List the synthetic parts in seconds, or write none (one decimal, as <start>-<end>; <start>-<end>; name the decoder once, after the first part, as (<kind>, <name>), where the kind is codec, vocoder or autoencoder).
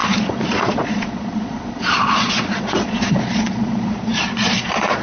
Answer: 0.0-5.0 (vocoder, Vocos)